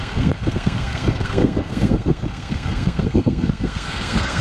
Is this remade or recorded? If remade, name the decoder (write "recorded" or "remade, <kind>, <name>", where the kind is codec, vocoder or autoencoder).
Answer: remade, codec, SNAC